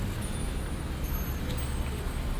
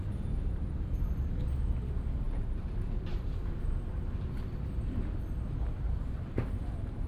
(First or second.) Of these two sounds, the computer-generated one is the second